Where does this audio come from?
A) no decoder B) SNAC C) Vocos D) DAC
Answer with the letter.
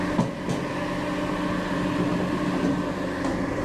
A